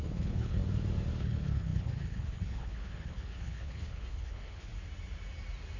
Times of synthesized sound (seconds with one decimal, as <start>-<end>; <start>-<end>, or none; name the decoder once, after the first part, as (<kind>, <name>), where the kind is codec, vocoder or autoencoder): 0.0-0.6 (codec, HILCodec); 1.2-4.7